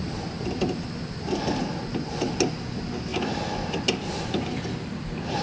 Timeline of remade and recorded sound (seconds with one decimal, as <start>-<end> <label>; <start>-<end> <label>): 0.0-5.4 recorded